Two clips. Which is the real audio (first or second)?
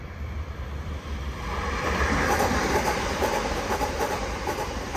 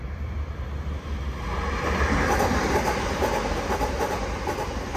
second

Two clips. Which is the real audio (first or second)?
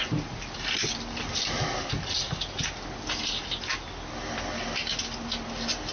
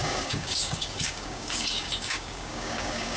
first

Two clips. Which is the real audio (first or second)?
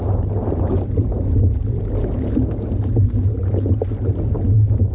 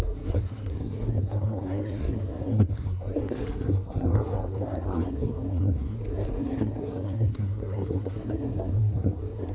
first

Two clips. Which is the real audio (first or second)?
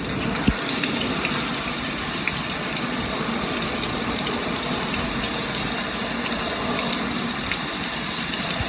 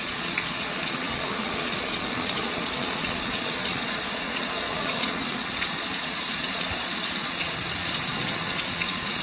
first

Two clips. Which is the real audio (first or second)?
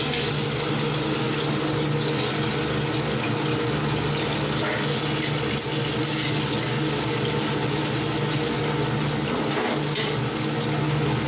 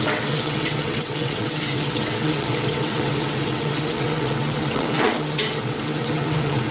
first